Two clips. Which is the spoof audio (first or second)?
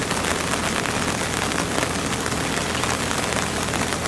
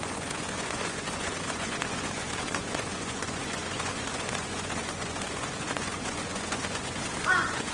second